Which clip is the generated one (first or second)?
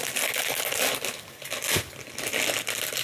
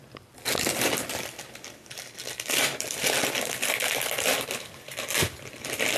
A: second